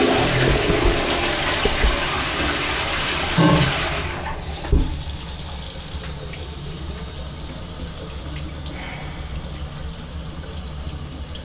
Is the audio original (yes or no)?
yes